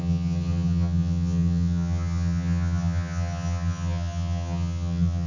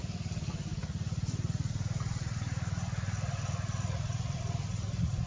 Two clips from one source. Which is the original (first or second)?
second